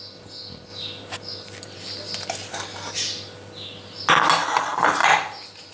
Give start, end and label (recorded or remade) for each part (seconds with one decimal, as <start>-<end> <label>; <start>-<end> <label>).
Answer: 0.0-5.7 recorded